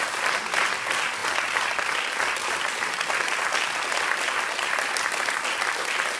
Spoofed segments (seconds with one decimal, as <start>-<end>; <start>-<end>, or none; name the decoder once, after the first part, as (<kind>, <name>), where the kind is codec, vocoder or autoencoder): none